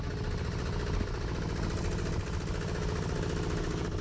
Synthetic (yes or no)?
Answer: no